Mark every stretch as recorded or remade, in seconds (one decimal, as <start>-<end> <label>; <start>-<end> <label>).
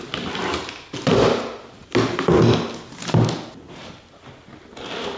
0.0-5.2 recorded